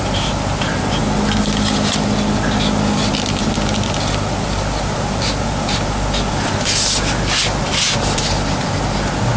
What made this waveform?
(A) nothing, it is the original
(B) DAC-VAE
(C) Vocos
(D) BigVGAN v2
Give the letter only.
A